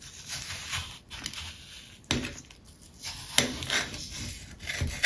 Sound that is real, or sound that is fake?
real